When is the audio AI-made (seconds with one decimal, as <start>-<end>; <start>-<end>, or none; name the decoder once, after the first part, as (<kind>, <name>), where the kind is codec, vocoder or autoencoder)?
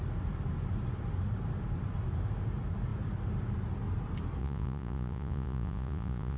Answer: 4.4-6.4 (vocoder, Vocos)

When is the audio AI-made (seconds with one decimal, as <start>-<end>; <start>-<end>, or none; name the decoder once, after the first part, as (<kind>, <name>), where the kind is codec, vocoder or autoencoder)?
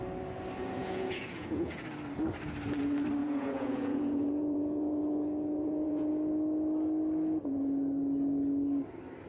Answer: 0.8-1.9 (vocoder, Vocos); 3.2-6.1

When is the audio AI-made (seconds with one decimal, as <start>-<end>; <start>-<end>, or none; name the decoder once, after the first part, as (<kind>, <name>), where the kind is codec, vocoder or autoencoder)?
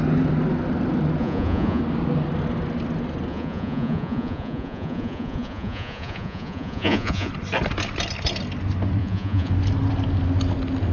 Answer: 1.2-1.8 (vocoder, Vocos); 3.3-7.3; 9.0-9.5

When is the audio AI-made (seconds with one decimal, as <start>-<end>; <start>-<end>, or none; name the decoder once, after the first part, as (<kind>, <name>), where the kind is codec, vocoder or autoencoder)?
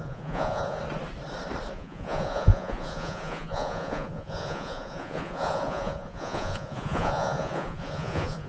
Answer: 0.0-0.8 (vocoder, Vocos); 1.7-8.5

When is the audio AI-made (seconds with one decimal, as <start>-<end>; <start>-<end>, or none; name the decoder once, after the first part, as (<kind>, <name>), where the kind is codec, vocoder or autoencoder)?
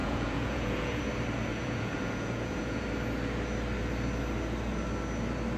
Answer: 0.0-1.0 (vocoder, Vocos); 1.5-2.8